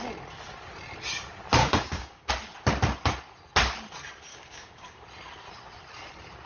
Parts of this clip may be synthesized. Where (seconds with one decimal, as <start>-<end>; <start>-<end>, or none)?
1.6-2.3; 4.3-5.0